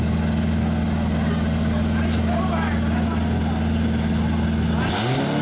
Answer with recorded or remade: recorded